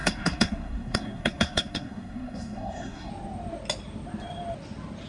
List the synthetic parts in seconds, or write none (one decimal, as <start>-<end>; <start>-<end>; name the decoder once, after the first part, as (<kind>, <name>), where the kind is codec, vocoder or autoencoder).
0.0-3.1 (codec, SNAC)